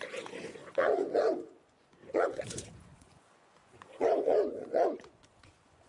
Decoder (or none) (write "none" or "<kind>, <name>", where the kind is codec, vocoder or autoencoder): vocoder, Vocos